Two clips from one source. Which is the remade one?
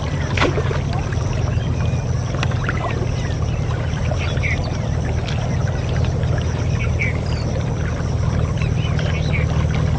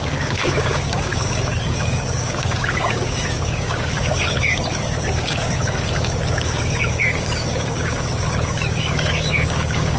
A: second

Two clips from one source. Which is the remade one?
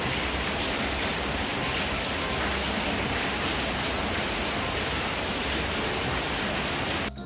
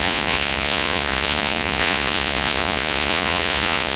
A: second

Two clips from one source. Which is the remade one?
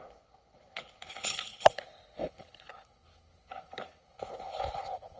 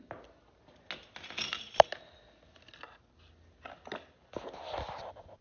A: first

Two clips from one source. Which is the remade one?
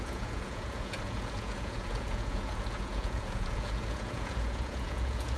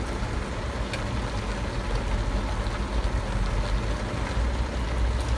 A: first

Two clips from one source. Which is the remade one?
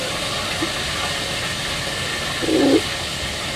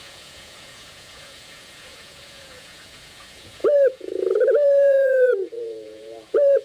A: second